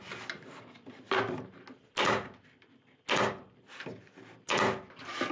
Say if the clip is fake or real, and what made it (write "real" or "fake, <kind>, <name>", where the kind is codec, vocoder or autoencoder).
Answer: real